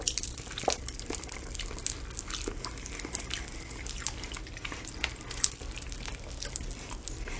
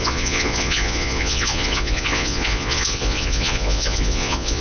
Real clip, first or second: first